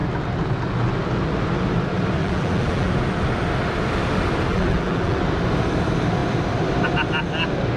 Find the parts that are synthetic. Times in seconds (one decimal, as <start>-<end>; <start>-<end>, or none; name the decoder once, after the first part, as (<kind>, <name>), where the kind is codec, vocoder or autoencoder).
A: 2.2-2.9 (vocoder, BigVGAN v2); 4.5-5.2